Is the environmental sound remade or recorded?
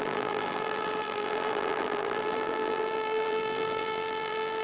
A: remade